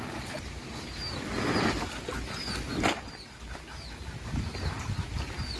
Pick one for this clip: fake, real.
real